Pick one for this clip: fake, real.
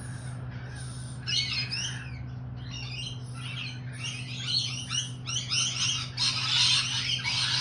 real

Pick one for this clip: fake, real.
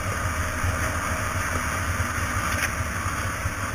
real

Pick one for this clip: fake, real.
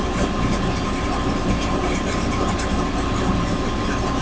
real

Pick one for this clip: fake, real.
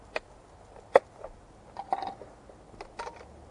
real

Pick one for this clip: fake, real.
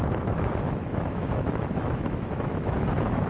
fake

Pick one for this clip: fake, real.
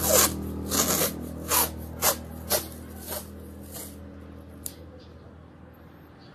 real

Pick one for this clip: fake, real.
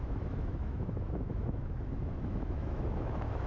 fake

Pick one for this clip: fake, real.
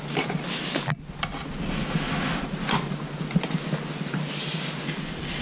real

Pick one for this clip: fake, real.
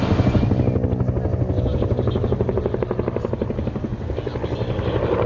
real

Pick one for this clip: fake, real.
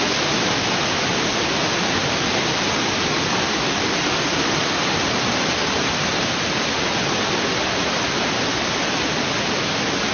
real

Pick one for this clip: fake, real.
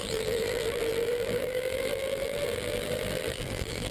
fake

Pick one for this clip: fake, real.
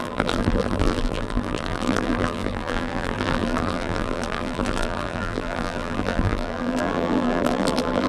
fake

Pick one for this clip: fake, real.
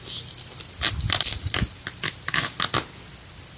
real